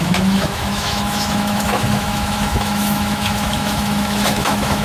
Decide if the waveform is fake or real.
fake